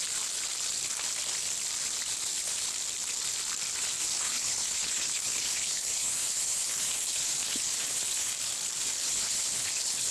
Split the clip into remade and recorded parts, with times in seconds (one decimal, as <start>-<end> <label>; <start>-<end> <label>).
0.0-4.0 recorded; 4.0-8.3 remade; 8.3-9.0 recorded; 9.0-10.1 remade

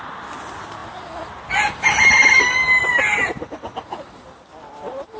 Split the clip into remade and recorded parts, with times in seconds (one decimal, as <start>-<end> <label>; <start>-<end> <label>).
0.0-5.2 recorded

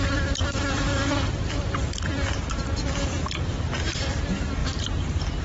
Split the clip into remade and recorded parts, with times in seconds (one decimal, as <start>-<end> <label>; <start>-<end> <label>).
0.0-4.6 recorded; 4.6-5.4 remade

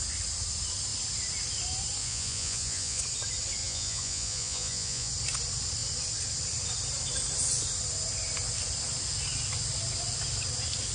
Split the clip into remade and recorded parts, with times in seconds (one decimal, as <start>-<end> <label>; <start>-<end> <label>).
0.0-2.0 recorded; 2.0-3.0 remade; 3.0-3.6 recorded; 3.6-5.1 remade; 5.1-10.9 recorded

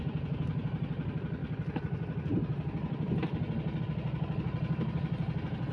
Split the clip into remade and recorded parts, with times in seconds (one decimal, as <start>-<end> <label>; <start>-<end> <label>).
0.0-5.7 recorded